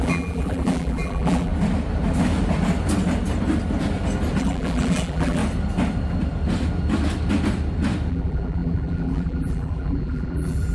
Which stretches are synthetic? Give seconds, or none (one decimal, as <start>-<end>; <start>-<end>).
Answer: 0.0-1.5; 4.4-5.4; 8.1-10.7